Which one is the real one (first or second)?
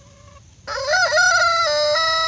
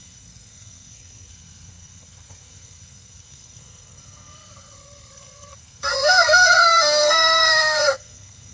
first